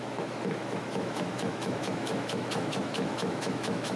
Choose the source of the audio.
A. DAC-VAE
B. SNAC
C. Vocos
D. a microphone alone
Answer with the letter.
A